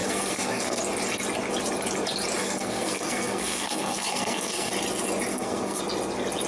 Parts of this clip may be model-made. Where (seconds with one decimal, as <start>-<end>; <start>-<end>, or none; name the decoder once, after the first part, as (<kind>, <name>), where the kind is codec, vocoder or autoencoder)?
0.0-0.8 (codec, SNAC); 2.4-4.7; 5.3-5.8